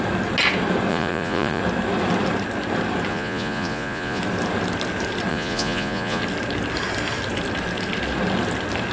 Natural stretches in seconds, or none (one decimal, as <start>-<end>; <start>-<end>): 0.0-0.9; 1.6-3.1; 4.2-5.3; 6.2-8.9